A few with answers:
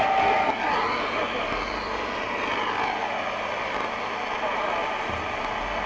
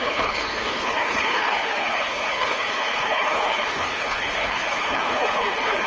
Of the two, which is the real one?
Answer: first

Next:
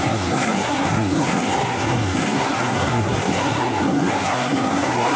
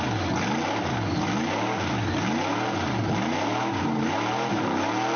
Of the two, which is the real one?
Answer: second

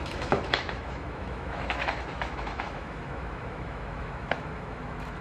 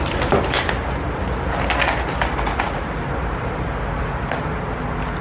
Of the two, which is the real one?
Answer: second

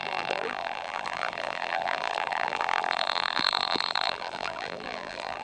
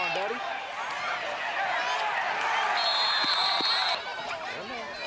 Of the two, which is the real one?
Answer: second